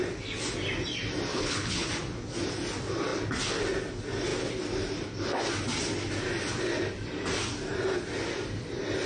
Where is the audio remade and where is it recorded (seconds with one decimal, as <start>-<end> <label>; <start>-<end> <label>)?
0.0-1.3 recorded; 1.3-1.9 remade; 1.9-9.1 recorded